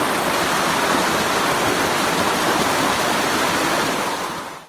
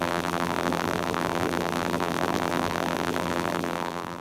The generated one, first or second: second